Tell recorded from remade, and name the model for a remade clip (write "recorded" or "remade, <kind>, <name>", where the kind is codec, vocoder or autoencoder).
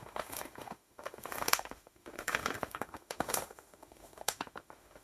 remade, autoencoder, DAC-VAE